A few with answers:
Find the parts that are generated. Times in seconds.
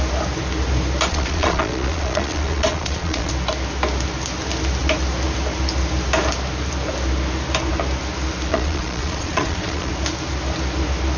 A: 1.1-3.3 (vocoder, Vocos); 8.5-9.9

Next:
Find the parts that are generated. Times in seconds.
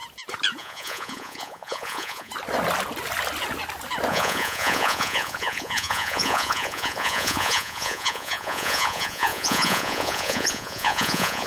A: 0.6-2.3 (vocoder, Vocos); 4.1-11.5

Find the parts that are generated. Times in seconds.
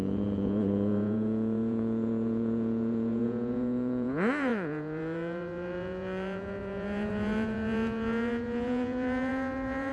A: 0.0-9.9 (vocoder, Vocos)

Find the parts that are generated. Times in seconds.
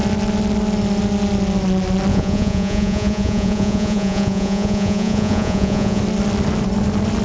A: 2.1-6.0 (vocoder, Vocos)